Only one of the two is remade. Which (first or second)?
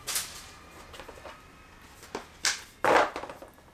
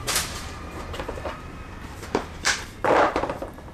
second